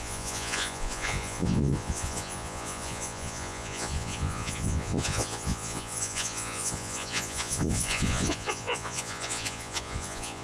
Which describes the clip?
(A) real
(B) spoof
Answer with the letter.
B